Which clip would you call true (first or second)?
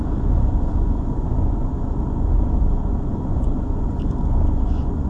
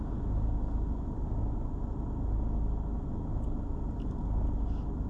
second